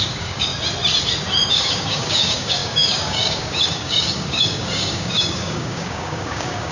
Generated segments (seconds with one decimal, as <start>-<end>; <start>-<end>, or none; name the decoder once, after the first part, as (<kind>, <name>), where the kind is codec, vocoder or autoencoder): 0.0-0.5 (codec, DAC); 1.5-6.7